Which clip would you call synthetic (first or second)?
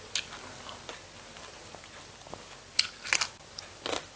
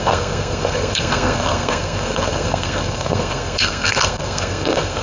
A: second